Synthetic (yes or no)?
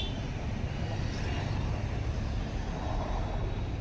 no